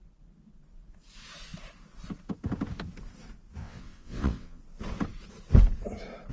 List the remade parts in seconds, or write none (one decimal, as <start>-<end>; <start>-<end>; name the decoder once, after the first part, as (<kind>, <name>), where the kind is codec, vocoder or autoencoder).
3.6-4.6 (vocoder, WaveNeXt)